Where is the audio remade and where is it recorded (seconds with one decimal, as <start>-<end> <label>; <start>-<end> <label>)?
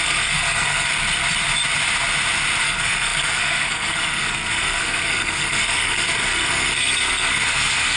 0.0-0.9 remade; 0.9-2.6 recorded; 2.6-8.0 remade